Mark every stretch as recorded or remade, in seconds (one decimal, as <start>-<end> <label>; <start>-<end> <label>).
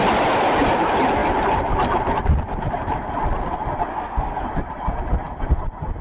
0.0-3.9 recorded; 3.9-4.4 remade; 4.4-6.0 recorded